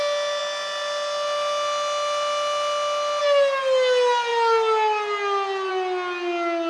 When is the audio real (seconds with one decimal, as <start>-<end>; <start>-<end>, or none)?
0.0-6.7